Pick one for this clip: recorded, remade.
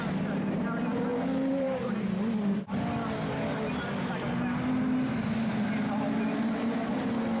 recorded